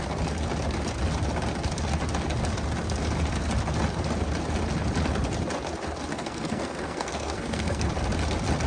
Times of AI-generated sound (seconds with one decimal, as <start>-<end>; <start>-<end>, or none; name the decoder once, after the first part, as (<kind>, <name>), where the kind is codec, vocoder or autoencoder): 6.1-7.9 (codec, SNAC)